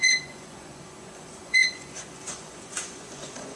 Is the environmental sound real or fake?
fake